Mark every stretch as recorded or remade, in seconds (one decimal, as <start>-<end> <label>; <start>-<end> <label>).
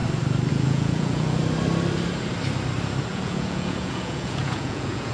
0.0-0.5 recorded; 0.5-1.4 remade; 1.4-3.1 recorded; 3.1-5.1 remade